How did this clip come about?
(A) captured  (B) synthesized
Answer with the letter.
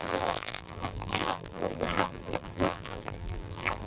B